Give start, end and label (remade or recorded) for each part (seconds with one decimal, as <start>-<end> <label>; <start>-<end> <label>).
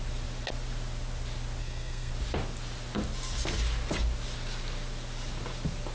0.0-1.6 recorded; 1.6-2.1 remade; 2.1-5.9 recorded